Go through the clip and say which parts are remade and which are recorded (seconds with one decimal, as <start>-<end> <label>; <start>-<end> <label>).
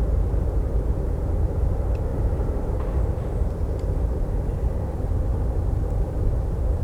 0.0-0.7 recorded; 0.7-1.6 remade; 1.6-2.1 recorded; 2.1-3.0 remade; 3.0-6.8 recorded